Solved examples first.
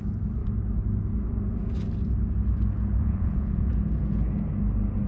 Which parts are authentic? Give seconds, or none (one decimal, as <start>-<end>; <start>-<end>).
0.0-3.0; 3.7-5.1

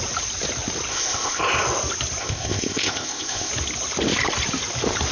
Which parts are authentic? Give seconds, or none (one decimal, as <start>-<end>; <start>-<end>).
0.0-0.9; 1.4-2.2; 3.5-5.1

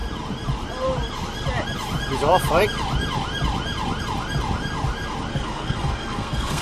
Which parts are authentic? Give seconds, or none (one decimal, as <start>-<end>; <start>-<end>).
0.0-5.3